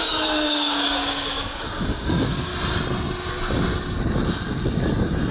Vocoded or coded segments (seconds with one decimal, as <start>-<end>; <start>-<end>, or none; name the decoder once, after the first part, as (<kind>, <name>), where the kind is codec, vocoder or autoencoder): 0.0-2.5 (codec, DAC)